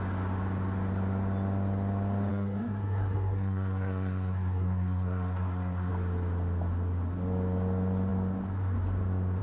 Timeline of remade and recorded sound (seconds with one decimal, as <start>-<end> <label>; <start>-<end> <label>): 0.0-2.3 recorded; 2.3-5.9 remade; 5.9-9.4 recorded